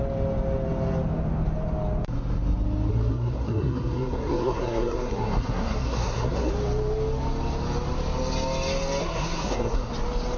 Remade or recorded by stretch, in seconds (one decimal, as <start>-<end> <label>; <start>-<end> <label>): 0.0-2.9 recorded; 2.9-6.5 remade; 6.5-9.0 recorded; 9.0-9.9 remade; 9.9-10.4 recorded